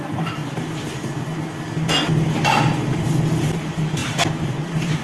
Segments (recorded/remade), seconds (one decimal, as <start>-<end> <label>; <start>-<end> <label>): 0.0-0.4 remade; 0.4-3.4 recorded; 3.4-4.0 remade; 4.0-4.6 recorded; 4.6-5.0 remade